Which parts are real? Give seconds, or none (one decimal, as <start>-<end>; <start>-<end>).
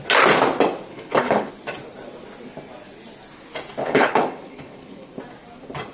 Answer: 0.0-0.9; 1.5-3.8; 5.1-5.9